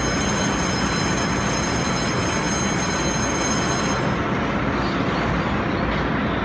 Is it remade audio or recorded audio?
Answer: recorded